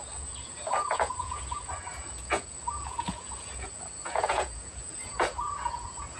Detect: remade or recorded remade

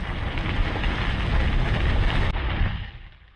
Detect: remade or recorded recorded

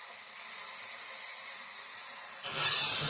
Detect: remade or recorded recorded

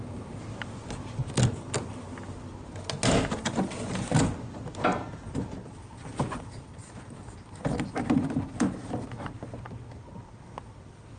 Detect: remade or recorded recorded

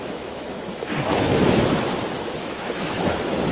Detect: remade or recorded remade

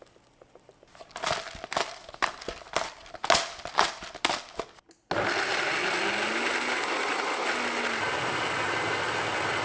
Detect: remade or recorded recorded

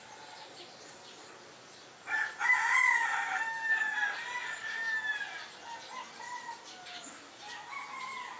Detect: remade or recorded recorded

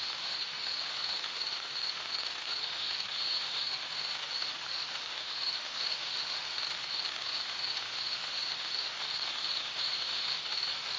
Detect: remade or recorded remade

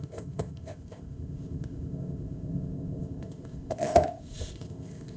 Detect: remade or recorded remade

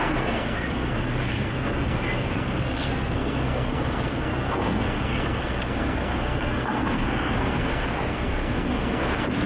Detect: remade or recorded remade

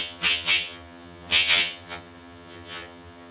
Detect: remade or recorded remade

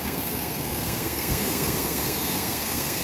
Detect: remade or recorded remade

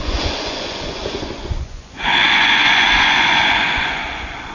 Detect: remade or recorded remade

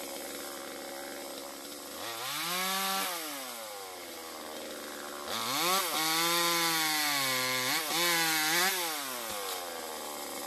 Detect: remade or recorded recorded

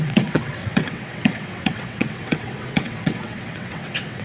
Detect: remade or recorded remade